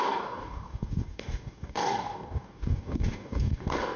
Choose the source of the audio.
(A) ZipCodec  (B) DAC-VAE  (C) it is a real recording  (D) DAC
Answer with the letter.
D